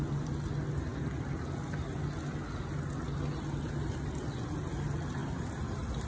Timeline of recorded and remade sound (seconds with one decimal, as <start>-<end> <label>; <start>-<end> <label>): 0.0-6.1 recorded